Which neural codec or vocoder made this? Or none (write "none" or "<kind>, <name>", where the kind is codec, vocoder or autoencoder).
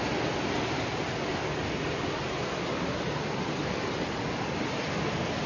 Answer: none